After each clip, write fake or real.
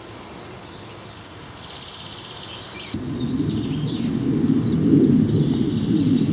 real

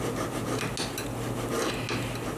real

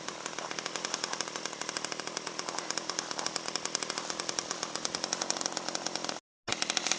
real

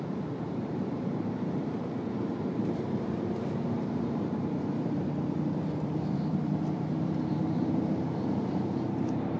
fake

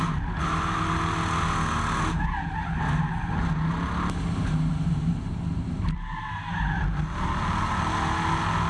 real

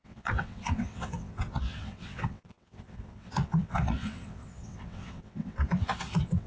fake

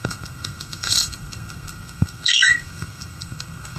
fake